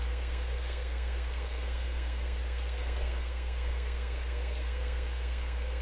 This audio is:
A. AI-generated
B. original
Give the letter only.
A